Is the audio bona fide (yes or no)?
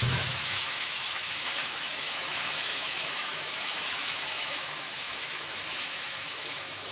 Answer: no